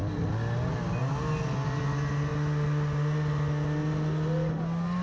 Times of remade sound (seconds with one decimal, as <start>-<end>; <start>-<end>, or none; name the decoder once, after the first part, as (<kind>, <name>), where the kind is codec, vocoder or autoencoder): none